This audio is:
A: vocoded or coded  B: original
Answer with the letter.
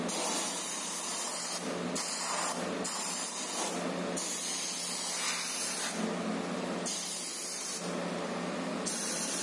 B